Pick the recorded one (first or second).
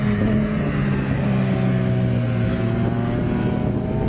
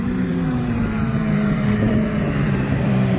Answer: first